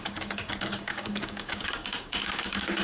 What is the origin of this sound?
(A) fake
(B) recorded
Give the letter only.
A